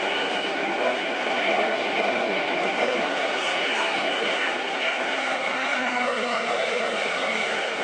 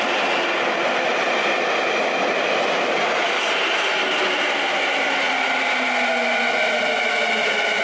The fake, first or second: first